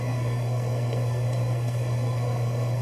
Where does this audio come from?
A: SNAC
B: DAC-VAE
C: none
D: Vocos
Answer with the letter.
A